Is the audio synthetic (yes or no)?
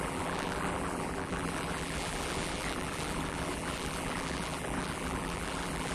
yes